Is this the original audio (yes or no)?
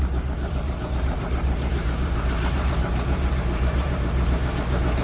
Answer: no